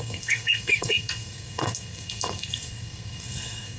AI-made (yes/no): yes